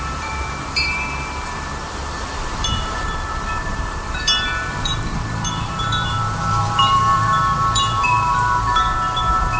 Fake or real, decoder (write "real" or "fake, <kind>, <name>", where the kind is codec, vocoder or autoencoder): fake, vocoder, BigVGAN v2